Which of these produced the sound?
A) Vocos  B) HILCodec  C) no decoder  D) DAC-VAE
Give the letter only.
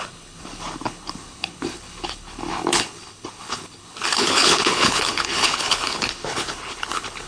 B